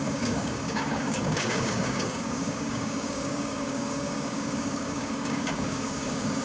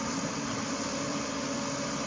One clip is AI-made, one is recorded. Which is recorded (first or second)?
second